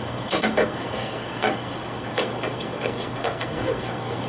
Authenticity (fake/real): fake